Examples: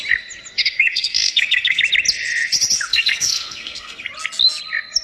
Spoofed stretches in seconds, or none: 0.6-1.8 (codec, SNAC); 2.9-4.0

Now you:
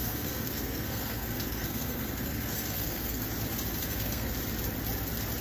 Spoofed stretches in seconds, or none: 0.0-3.2 (codec, SNAC); 3.8-4.3

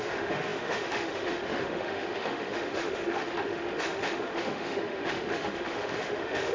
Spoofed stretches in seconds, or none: 0.0-6.5 (autoencoder, DAC-VAE)

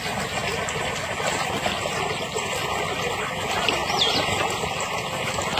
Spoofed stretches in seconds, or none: none